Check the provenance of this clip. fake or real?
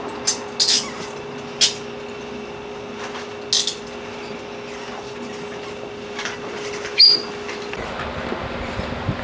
real